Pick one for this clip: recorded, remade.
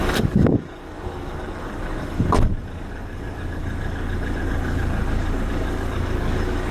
remade